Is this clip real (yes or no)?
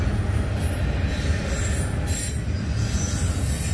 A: yes